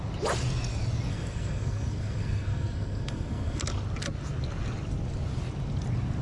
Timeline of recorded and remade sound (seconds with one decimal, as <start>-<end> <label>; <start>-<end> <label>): 0.0-1.1 recorded; 1.1-3.6 remade; 3.6-6.2 recorded